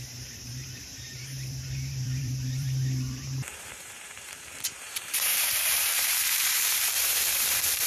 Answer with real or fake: fake